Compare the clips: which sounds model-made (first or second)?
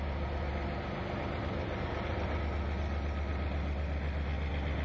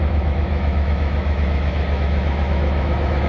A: second